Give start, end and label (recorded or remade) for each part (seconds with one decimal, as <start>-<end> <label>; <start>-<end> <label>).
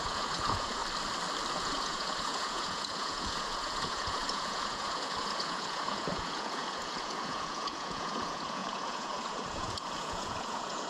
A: 0.0-0.8 remade; 0.8-1.5 recorded; 1.5-10.9 remade